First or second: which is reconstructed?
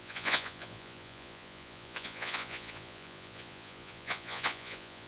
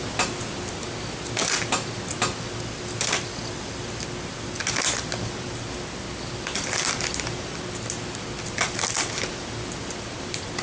first